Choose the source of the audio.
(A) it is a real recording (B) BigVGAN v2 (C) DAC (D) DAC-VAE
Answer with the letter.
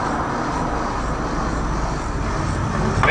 A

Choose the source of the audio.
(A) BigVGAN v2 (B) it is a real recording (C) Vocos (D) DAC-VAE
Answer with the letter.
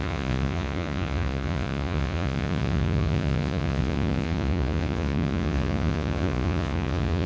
C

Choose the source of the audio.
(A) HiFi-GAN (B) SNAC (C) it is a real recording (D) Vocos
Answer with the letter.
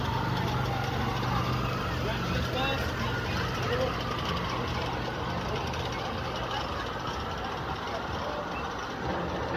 C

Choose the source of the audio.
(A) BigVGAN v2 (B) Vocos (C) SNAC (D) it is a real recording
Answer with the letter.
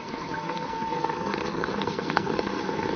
C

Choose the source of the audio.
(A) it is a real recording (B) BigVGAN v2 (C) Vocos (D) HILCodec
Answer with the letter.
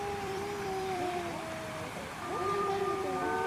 B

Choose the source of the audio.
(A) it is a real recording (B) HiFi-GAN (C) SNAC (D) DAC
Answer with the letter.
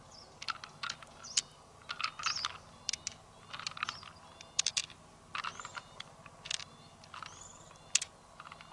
A